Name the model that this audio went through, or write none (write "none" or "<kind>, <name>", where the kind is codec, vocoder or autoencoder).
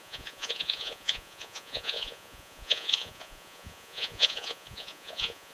vocoder, Vocos